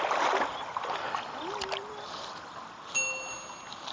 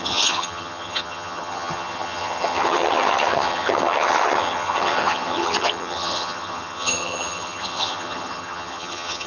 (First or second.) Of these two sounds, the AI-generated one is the second